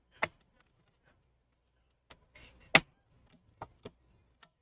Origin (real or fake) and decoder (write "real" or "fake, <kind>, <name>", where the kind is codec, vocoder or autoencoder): real